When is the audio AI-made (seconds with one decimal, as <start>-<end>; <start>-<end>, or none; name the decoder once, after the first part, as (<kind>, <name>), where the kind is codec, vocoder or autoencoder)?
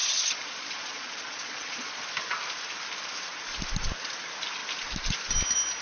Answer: 0.0-2.0 (vocoder, Vocos)